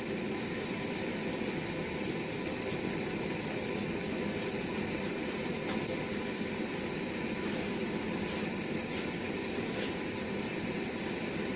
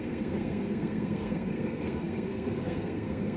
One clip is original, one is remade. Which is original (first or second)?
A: first